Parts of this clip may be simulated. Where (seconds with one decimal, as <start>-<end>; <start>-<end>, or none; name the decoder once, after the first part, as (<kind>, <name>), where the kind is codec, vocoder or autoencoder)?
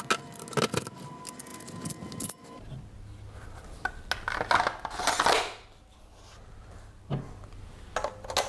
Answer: none